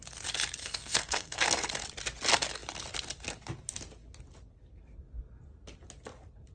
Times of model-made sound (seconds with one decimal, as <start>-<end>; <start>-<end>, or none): 0.6-1.7